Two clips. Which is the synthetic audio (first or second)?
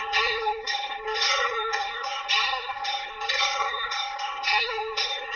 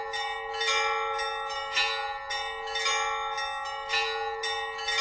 first